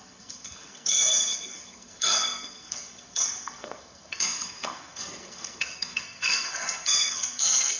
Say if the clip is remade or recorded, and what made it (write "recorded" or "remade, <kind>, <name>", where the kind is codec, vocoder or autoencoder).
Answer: remade, codec, SNAC